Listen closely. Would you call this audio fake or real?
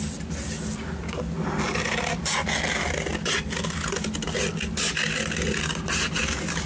real